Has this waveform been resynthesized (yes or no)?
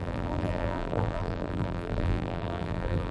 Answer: yes